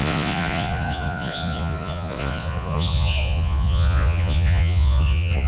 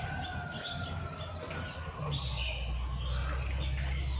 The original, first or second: second